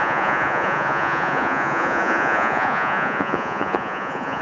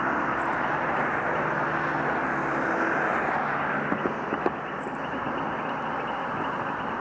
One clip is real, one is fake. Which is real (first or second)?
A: second